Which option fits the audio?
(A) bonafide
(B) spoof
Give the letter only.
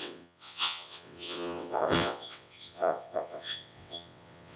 B